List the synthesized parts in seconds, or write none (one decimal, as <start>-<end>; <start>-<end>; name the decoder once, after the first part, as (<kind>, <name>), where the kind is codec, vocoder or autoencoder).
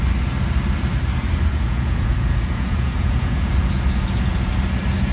1.5-4.5 (vocoder, Vocos)